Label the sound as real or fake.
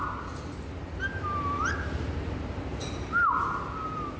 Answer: real